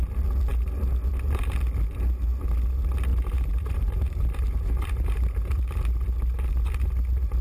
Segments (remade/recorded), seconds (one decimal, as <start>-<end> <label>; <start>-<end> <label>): 0.0-3.1 recorded; 3.1-5.8 remade; 5.8-7.4 recorded